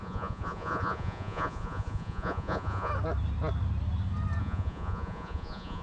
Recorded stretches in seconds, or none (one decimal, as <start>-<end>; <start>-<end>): 2.9-4.4

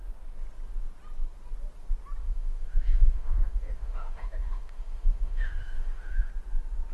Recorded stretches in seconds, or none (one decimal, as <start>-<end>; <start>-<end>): 0.0-2.2; 6.3-6.9

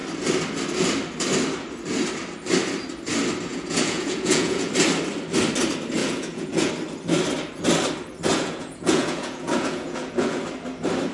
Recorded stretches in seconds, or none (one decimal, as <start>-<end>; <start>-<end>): 0.0-3.5; 4.7-6.0; 6.7-8.3; 10.4-11.1